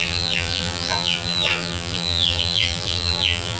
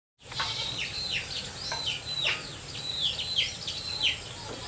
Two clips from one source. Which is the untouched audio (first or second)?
second